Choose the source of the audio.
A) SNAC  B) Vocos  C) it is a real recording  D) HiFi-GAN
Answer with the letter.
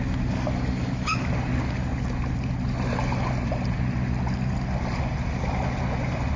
C